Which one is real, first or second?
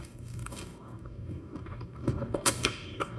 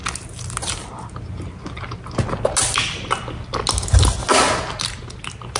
second